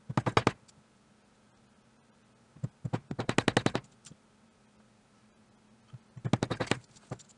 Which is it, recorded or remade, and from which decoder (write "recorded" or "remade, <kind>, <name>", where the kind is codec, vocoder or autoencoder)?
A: recorded